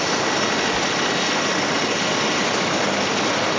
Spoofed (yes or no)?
no